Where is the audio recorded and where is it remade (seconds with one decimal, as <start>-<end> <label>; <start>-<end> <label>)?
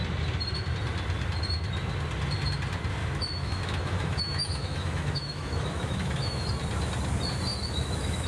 0.0-3.0 recorded; 3.0-6.5 remade; 6.5-7.5 recorded; 7.5-8.3 remade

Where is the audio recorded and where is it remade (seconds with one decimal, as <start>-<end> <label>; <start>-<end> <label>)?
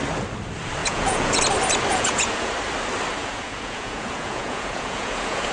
0.0-0.8 recorded; 0.8-1.4 remade; 1.4-1.9 recorded; 1.9-2.5 remade; 2.5-3.2 recorded; 3.2-5.5 remade